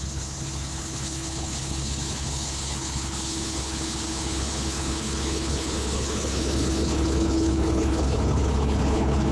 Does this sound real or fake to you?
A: fake